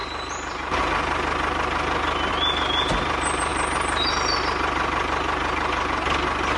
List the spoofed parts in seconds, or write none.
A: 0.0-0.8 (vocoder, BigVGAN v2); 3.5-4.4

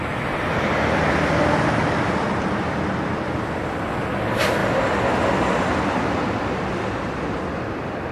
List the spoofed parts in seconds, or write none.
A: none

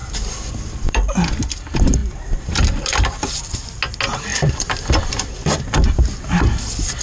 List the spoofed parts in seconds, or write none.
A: 0.0-1.6 (vocoder, BigVGAN v2); 2.0-3.3; 4.3-5.2

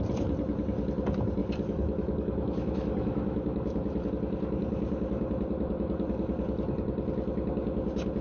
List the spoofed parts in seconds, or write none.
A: 1.4-4.1 (autoencoder, DAC-VAE)